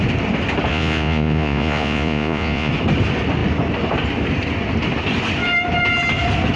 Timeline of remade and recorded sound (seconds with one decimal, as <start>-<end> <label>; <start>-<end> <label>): 0.0-0.7 recorded; 0.7-2.7 remade; 2.7-6.6 recorded